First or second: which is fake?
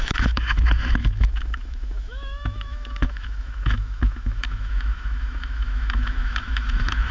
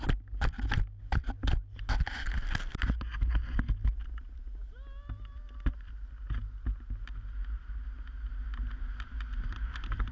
first